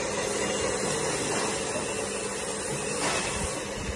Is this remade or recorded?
recorded